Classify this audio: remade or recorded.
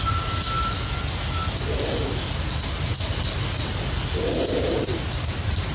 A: recorded